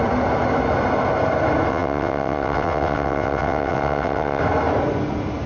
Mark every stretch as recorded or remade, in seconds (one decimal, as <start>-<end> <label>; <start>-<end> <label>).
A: 0.0-1.7 recorded; 1.7-4.4 remade; 4.4-5.5 recorded